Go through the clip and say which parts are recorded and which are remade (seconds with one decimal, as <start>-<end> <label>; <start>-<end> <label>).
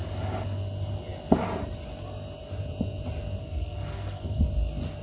0.0-3.4 recorded; 3.4-4.4 remade; 4.4-5.0 recorded